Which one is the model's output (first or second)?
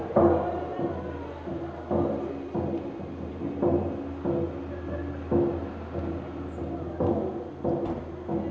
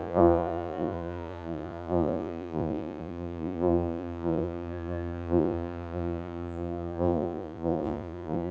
second